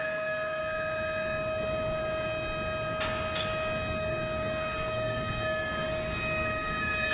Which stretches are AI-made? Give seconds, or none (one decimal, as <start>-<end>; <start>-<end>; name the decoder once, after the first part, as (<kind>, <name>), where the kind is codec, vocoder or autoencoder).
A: 0.0-0.6 (codec, DAC); 3.9-7.1